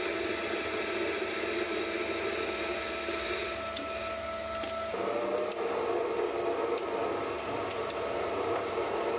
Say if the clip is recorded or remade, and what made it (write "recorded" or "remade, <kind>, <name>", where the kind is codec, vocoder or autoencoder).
recorded